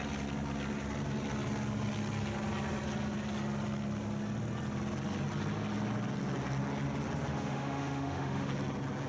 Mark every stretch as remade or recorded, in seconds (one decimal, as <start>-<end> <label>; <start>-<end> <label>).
0.0-7.3 recorded; 7.3-8.5 remade; 8.5-9.1 recorded